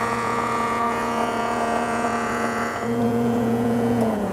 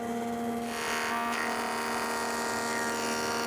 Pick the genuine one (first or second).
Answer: second